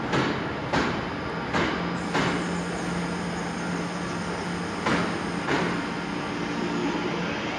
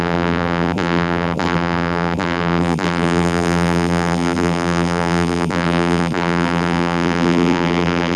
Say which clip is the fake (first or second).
second